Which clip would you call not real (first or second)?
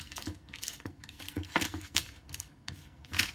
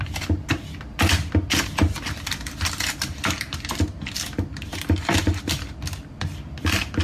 first